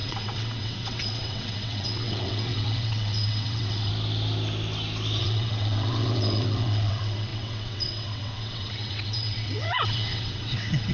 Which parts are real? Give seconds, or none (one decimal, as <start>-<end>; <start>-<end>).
3.9-5.2